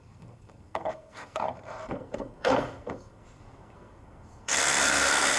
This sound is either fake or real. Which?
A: fake